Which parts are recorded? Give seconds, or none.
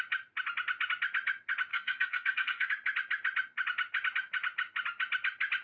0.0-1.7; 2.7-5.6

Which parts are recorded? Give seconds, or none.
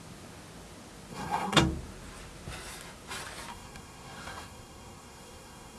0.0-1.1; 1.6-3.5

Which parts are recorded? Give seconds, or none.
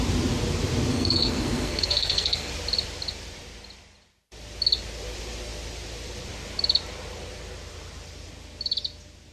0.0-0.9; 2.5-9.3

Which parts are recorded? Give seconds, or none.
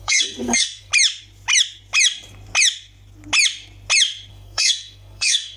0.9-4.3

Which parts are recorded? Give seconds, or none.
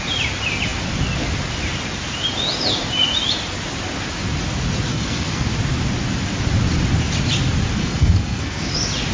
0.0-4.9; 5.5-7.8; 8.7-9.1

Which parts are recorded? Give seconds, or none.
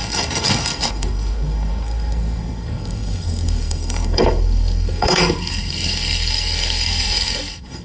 none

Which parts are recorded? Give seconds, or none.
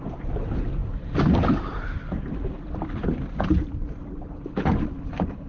0.0-5.5